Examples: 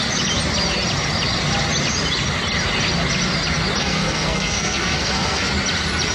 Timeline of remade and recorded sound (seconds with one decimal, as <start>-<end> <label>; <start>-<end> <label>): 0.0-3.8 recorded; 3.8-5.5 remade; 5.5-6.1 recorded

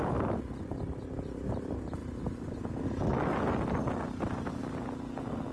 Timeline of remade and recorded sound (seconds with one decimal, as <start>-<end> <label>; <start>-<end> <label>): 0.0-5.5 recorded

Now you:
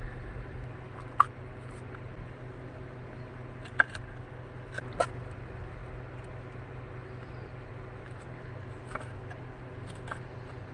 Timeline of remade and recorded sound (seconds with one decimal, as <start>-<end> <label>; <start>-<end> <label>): 0.0-10.7 recorded

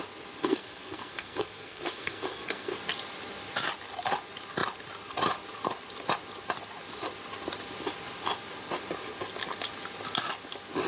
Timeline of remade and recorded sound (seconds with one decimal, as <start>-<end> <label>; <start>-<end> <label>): 0.0-0.4 recorded; 0.4-2.8 remade; 2.8-10.9 recorded